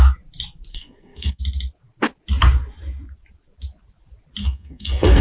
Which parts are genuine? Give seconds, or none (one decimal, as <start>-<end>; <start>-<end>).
0.0-0.7; 1.4-4.4